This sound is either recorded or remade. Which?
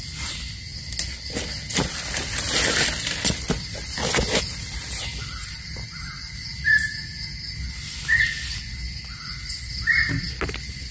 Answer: recorded